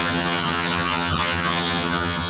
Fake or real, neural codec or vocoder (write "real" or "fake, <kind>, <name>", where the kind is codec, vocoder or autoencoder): fake, vocoder, HiFi-GAN